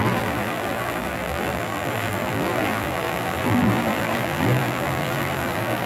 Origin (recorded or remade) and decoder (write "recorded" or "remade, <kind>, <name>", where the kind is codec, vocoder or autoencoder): remade, vocoder, BigVGAN v2